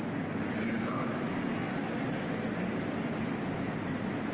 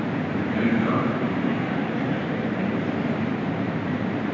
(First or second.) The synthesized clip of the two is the second